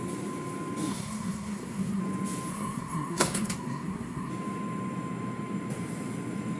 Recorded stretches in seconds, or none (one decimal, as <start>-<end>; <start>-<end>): 0.0-0.9; 2.0-2.5; 4.3-6.6